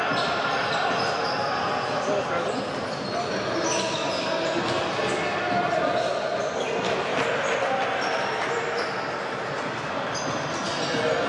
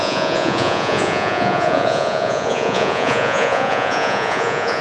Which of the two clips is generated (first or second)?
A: second